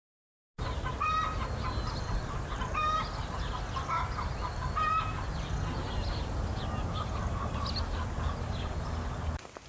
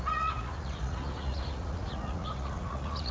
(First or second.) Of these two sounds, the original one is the first